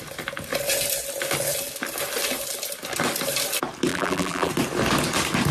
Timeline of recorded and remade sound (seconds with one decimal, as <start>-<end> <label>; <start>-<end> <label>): 0.0-3.9 recorded; 3.9-4.5 remade; 4.5-5.5 recorded